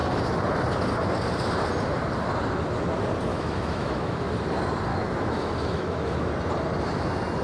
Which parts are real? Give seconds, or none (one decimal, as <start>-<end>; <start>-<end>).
0.0-3.3; 4.3-4.9; 6.3-7.4